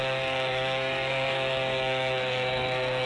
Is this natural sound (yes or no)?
no